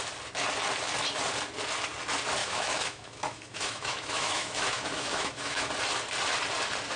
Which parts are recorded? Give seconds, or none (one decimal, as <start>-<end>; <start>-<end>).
0.0-2.4; 5.7-7.0